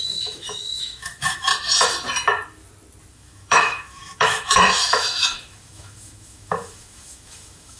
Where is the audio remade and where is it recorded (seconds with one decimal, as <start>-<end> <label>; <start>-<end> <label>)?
0.0-1.5 remade; 1.5-3.1 recorded; 3.1-7.8 remade